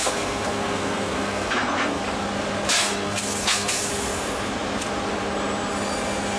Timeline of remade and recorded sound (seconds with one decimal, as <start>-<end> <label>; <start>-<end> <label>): 0.0-2.0 remade; 2.0-2.8 recorded; 2.8-3.9 remade; 3.9-6.4 recorded